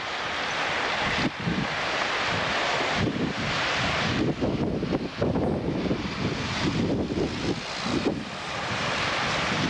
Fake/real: fake